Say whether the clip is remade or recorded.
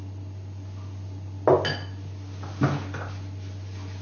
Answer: recorded